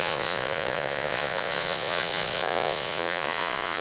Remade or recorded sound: remade